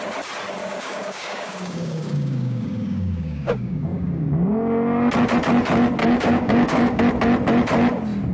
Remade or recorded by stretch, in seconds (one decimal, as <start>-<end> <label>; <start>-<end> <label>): 0.0-0.6 recorded; 0.6-5.1 remade; 5.1-6.0 recorded; 6.0-7.0 remade; 7.0-8.3 recorded